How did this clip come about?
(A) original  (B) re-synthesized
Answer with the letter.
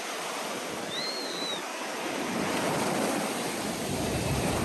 B